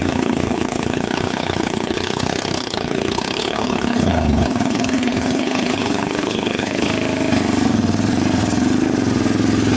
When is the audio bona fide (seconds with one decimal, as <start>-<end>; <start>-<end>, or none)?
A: 6.9-9.8